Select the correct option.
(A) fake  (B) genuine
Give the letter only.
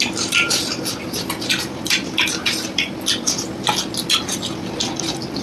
B